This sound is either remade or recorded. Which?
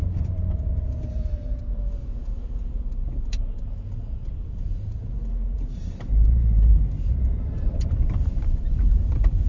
remade